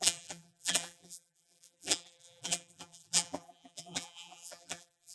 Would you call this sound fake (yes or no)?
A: yes